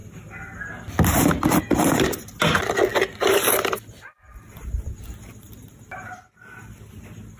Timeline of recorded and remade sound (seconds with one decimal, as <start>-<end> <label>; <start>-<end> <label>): 0.0-2.9 recorded; 2.9-5.9 remade; 5.9-7.4 recorded